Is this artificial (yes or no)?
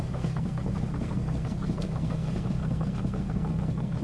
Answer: yes